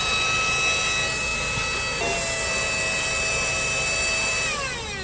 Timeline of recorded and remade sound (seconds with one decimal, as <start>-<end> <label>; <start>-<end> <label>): 0.0-5.0 recorded